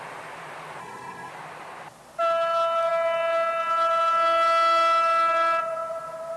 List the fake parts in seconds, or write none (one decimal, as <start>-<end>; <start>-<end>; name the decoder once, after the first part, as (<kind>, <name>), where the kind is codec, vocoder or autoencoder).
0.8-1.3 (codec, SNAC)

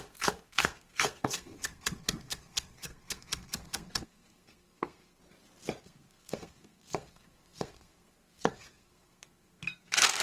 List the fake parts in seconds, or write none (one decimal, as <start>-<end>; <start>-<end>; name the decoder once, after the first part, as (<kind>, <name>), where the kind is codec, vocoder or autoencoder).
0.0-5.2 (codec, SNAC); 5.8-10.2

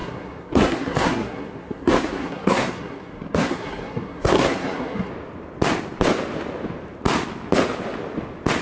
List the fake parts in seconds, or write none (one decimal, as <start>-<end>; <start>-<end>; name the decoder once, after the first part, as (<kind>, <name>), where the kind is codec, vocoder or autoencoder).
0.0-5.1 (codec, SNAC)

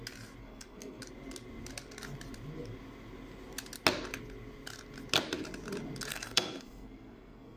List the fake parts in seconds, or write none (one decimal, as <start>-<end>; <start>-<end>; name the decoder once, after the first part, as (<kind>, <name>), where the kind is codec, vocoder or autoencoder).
0.4-1.0 (codec, SNAC); 6.1-7.6

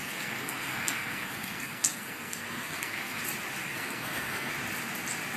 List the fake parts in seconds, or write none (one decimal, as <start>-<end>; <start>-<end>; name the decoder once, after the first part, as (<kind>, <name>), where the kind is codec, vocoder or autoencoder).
0.0-3.2 (codec, SNAC); 3.6-4.5

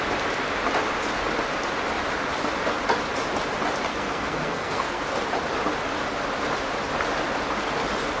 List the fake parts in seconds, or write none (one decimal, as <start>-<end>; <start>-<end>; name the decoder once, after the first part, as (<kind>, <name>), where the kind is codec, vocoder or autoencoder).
3.9-5.0 (codec, SNAC)

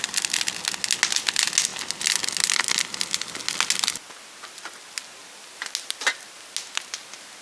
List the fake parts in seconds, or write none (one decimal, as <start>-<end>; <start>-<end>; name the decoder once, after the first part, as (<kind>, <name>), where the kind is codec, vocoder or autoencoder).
none

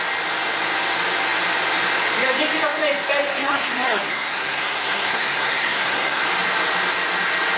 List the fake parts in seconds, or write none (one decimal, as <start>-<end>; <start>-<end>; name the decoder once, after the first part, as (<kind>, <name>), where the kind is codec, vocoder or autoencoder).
3.3-6.2 (codec, SNAC)